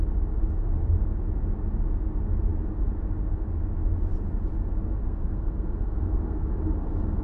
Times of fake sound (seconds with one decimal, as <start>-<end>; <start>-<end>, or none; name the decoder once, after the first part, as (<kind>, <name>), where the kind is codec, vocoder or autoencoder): 5.0-6.5 (codec, SNAC)